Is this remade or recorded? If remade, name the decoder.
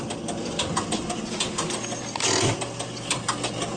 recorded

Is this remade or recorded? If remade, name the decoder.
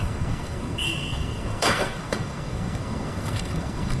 remade, codec, SNAC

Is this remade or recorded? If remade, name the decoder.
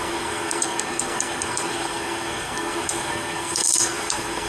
remade, codec, SNAC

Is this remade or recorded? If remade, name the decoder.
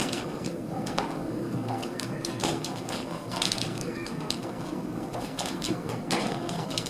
remade, codec, SNAC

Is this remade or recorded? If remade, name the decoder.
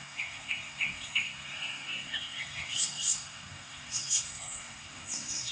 remade, codec, SNAC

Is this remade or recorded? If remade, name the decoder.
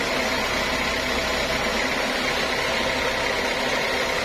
recorded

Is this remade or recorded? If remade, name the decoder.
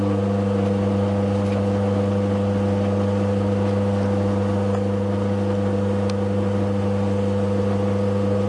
recorded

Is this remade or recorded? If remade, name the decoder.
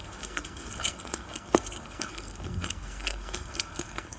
remade, codec, SNAC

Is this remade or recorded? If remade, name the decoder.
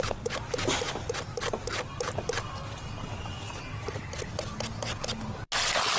recorded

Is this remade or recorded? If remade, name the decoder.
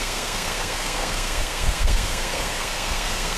remade, codec, SNAC